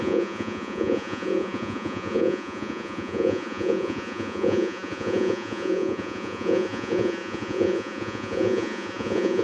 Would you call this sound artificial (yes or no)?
yes